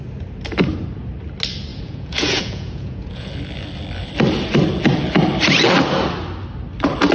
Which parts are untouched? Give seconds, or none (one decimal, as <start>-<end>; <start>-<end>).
0.0-1.7; 3.3-7.1